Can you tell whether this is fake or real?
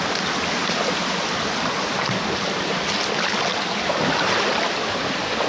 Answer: real